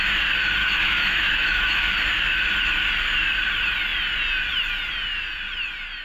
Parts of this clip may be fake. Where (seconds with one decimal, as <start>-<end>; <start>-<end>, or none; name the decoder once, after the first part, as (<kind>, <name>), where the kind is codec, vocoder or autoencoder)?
0.6-1.8 (autoencoder, DAC-VAE)